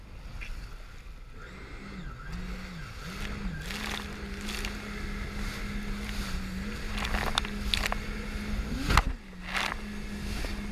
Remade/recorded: recorded